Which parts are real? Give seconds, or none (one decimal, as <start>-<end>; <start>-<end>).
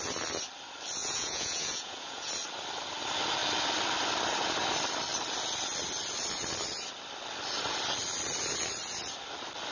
0.0-1.0; 2.3-9.7